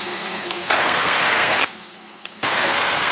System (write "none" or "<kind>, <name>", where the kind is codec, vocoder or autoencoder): codec, SNAC